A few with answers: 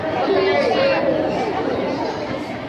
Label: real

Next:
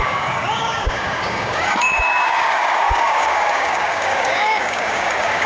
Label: fake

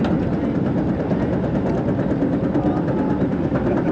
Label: real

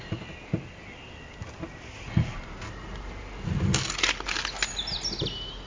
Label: real